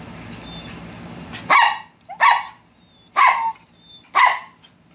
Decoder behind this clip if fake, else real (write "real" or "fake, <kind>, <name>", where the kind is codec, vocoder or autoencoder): real